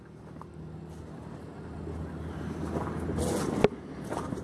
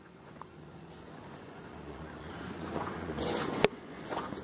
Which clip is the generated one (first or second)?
second